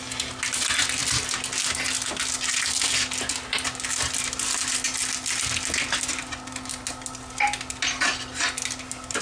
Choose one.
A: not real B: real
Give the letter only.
B